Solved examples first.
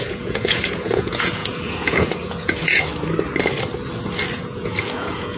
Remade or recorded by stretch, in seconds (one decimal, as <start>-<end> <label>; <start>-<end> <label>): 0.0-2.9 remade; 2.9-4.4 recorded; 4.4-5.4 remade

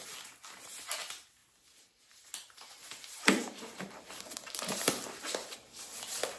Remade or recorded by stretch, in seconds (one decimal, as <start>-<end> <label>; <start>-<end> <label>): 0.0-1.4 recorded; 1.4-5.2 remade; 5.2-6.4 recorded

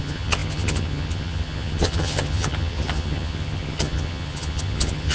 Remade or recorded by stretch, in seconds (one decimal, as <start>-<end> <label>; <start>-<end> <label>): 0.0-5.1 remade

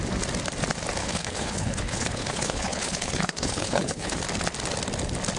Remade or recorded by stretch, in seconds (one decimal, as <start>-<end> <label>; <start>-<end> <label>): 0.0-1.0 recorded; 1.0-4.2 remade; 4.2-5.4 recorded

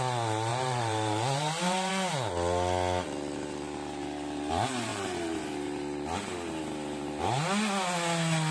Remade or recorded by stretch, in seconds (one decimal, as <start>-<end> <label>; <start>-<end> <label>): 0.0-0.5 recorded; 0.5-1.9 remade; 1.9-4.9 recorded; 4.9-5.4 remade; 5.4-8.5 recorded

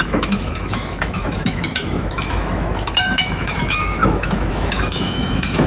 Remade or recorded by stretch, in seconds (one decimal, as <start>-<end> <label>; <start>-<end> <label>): 0.0-5.7 remade

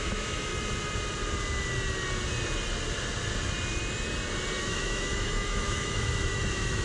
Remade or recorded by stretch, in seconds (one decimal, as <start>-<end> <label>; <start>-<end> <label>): 0.0-0.5 remade; 0.5-4.6 recorded; 4.6-6.8 remade

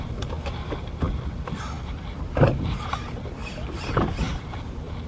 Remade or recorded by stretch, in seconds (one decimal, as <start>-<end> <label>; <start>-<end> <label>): 0.0-5.1 recorded